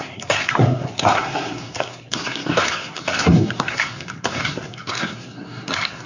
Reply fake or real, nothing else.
fake